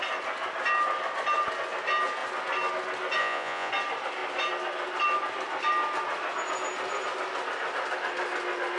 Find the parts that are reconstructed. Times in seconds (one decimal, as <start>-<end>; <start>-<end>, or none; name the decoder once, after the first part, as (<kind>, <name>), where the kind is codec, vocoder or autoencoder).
3.2-3.7 (vocoder, Vocos)